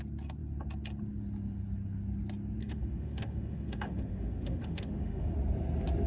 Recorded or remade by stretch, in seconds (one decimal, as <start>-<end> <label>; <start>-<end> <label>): 0.0-2.6 recorded; 2.6-5.3 remade; 5.3-6.1 recorded